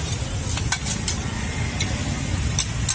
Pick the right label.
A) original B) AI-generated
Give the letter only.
A